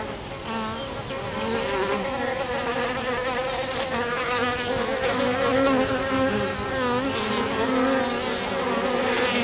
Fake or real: real